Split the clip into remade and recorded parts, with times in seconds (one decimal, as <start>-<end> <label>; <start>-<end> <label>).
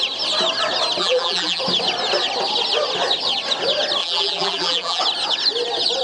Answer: 0.0-1.0 recorded; 1.0-1.6 remade; 1.6-4.0 recorded; 4.0-5.0 remade; 5.0-6.0 recorded